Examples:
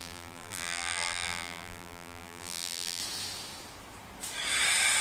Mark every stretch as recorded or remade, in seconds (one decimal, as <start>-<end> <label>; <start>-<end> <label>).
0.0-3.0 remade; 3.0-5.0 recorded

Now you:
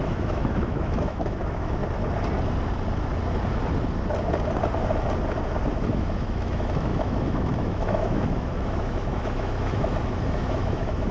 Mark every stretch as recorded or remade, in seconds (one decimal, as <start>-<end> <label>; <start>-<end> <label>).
0.0-1.8 remade; 1.8-5.7 recorded; 5.7-11.1 remade

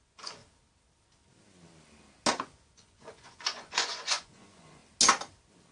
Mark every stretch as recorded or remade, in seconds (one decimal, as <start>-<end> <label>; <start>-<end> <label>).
0.0-0.4 remade; 0.4-2.3 recorded; 2.3-4.8 remade; 4.8-5.7 recorded

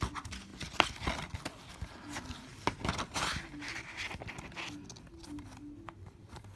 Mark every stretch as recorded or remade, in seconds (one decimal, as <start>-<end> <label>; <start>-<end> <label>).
0.0-6.6 recorded